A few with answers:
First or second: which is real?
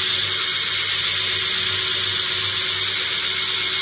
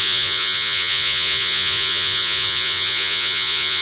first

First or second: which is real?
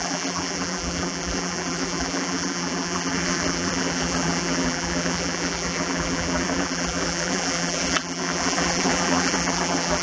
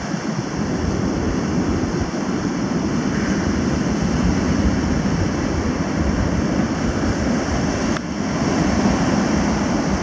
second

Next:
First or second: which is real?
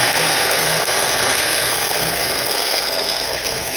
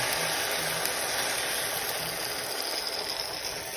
second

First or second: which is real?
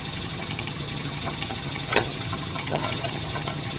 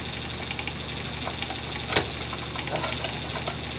second